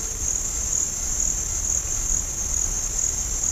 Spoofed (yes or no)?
no